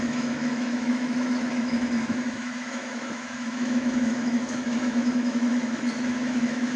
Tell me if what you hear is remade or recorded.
remade